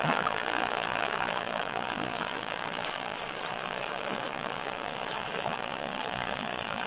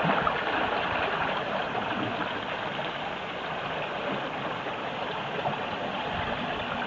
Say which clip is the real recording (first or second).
second